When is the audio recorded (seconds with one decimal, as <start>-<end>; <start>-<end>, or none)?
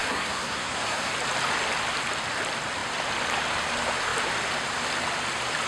1.1-5.7